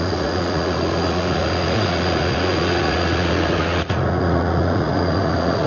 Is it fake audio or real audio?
fake